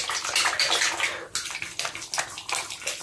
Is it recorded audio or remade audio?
recorded